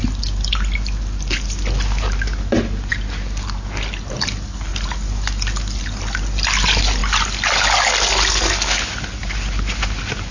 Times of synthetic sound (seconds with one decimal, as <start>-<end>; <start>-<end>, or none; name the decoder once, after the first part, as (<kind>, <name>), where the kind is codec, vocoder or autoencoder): none